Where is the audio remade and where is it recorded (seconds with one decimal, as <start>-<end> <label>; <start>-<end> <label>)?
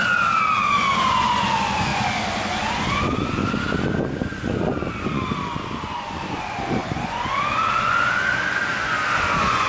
0.0-3.4 remade; 3.4-4.0 recorded; 4.0-5.2 remade; 5.2-5.8 recorded; 5.8-9.7 remade